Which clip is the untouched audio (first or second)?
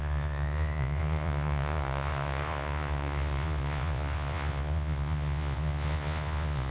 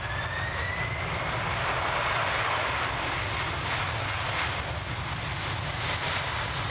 second